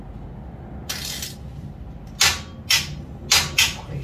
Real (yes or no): yes